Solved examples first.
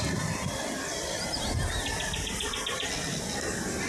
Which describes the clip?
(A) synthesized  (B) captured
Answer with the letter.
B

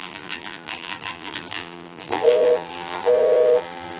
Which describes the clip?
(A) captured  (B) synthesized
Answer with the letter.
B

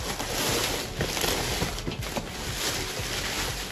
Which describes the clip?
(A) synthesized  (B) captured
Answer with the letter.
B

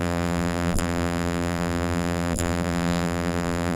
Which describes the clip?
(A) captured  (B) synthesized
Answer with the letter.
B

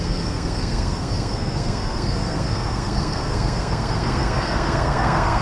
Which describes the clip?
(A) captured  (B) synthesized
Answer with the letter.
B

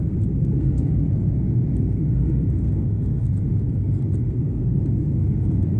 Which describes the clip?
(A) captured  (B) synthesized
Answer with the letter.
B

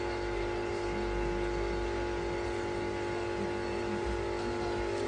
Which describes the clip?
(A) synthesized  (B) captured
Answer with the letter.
B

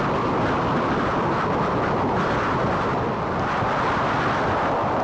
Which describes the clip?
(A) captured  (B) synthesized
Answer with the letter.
A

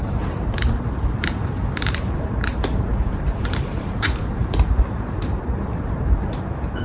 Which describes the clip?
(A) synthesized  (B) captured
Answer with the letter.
A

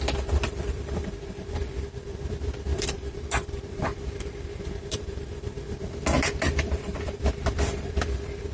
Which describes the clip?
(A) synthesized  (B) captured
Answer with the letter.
A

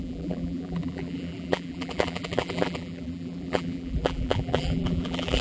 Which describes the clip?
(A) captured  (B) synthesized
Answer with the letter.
B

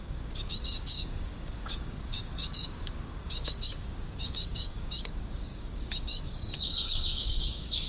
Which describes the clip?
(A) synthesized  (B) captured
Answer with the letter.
A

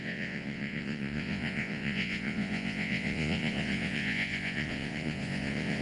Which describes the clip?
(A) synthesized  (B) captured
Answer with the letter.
A